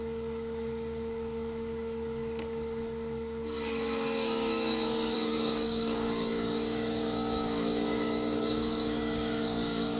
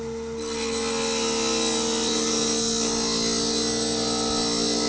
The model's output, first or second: first